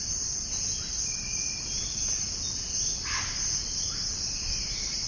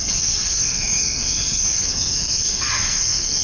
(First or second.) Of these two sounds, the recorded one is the first